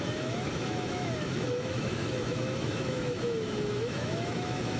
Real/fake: fake